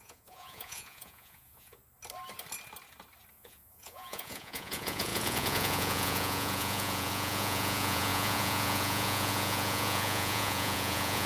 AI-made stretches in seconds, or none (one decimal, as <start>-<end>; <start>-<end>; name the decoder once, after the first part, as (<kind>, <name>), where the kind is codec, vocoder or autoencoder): 0.0-1.8 (vocoder, Vocos); 3.3-11.3